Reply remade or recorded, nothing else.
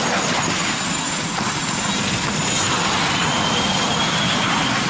recorded